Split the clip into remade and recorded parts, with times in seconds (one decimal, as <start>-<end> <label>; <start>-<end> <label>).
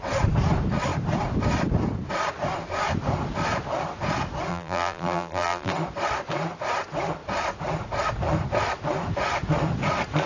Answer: 0.0-4.5 recorded; 4.5-5.7 remade; 5.7-10.3 recorded